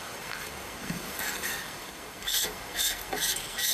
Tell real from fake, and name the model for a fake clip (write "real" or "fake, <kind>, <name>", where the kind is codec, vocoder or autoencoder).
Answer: fake, codec, SNAC